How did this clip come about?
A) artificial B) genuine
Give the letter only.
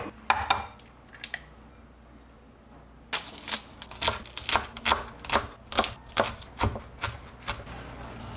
B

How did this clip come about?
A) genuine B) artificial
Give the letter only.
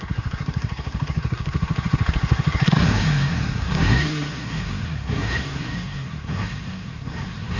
B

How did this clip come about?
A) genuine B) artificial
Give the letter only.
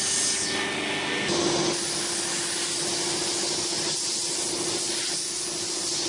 A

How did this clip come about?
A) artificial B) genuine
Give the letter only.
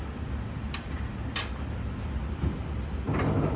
B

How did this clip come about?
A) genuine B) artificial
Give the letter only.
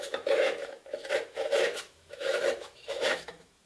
B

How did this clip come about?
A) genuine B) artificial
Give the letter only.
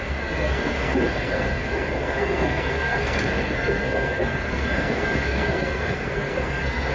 B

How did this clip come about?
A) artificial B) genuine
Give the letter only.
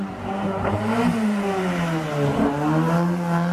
B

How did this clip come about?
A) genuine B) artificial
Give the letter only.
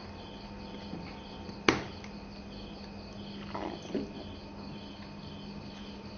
A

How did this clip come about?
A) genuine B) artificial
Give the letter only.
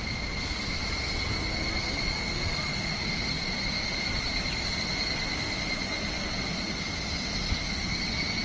A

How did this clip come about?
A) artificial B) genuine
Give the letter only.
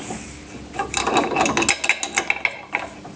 B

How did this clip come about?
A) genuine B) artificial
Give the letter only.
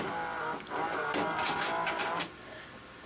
A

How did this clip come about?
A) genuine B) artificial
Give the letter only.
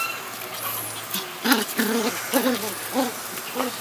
A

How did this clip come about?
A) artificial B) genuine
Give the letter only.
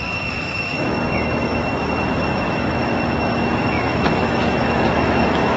A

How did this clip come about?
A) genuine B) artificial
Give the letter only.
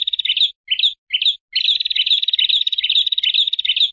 A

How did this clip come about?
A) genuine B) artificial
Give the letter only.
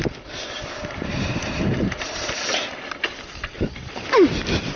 A